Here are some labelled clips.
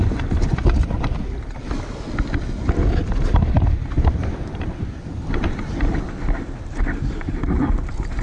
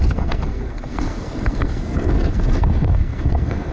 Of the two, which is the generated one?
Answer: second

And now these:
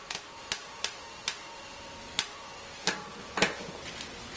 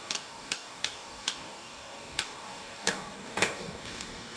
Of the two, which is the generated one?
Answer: second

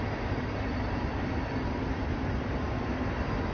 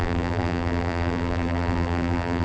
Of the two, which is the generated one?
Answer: second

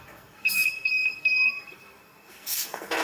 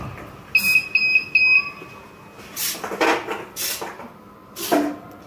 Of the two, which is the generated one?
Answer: first